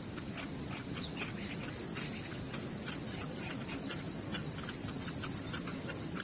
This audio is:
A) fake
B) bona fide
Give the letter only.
B